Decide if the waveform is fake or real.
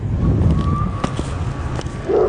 real